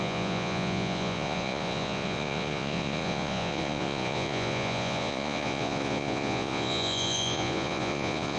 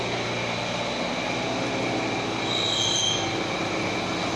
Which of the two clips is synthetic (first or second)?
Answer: first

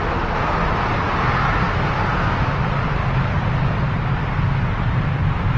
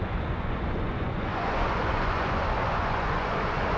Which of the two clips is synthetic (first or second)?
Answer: second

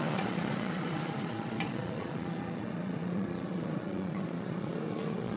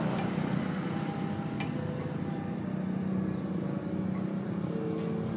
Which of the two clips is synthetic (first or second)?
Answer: first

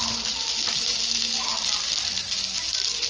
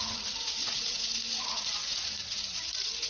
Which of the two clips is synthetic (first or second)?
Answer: second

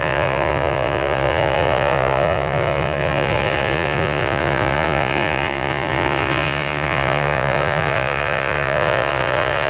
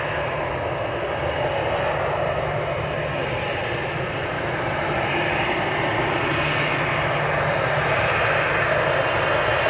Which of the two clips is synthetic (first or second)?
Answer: first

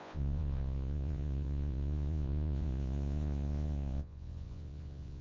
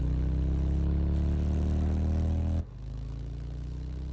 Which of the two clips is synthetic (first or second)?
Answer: first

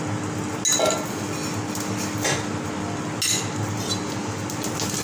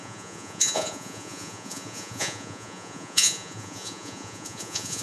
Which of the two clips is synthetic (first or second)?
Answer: second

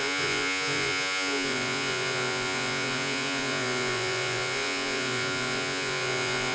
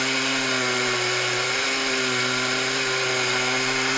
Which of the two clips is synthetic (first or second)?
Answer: first